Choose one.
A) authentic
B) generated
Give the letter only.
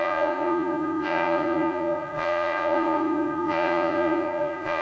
B